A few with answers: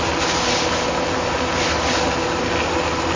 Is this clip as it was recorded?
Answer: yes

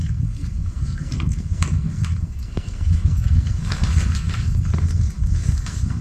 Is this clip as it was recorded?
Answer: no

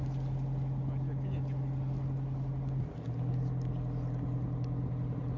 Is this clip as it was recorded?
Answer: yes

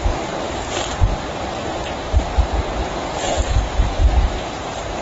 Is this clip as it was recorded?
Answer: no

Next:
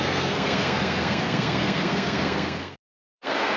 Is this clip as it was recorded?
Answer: no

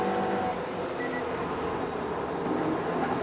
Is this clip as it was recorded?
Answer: yes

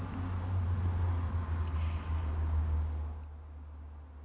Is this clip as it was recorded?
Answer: yes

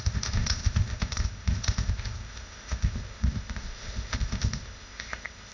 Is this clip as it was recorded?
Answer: no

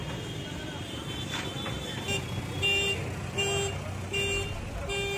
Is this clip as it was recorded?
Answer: yes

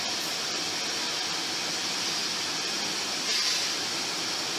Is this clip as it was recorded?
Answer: yes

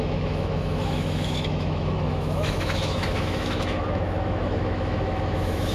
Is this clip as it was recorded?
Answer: no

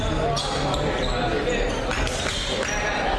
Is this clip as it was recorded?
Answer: yes